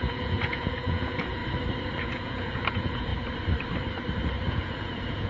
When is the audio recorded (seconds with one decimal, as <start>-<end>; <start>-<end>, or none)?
1.4-2.0; 3.1-4.5